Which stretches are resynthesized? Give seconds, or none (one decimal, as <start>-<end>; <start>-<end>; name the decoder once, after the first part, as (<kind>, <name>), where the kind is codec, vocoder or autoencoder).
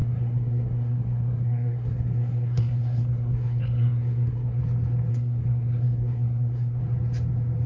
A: 0.0-4.6 (codec, SNAC); 5.1-6.8